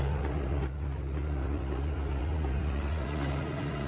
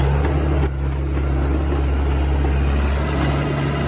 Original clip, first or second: second